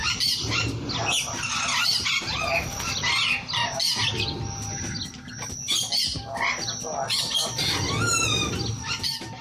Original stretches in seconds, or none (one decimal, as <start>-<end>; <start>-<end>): 0.6-9.4